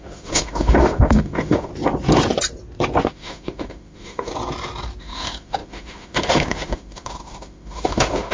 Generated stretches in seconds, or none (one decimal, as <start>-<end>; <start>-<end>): 0.0-1.7; 3.1-4.3; 5.0-8.3